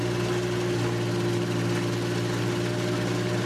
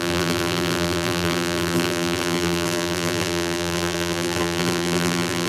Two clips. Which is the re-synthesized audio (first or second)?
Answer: second